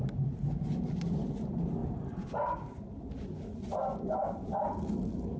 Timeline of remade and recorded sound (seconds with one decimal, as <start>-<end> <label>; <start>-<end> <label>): 0.0-5.4 recorded